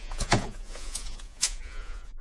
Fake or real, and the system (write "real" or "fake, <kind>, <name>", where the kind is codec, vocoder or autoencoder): fake, vocoder, Vocos